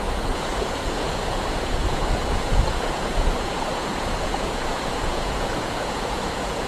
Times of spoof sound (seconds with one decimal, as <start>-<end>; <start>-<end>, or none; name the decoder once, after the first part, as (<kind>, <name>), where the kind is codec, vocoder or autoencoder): 0.0-6.7 (vocoder, Vocos)